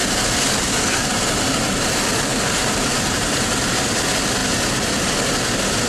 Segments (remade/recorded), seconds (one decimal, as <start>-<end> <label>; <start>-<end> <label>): 0.0-2.3 recorded; 2.3-3.8 remade; 3.8-5.9 recorded